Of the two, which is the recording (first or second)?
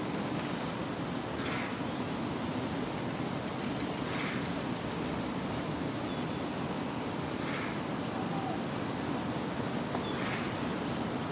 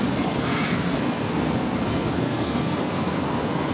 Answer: first